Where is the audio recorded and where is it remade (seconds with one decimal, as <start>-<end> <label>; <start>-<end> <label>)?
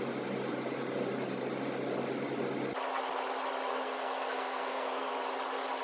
0.0-3.7 recorded; 3.7-5.1 remade; 5.1-5.8 recorded